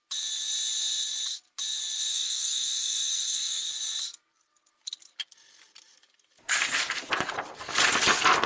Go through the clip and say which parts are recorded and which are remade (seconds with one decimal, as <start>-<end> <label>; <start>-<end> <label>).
0.0-2.1 recorded; 2.1-3.7 remade; 3.7-8.5 recorded